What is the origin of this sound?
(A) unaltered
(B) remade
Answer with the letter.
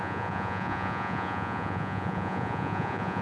B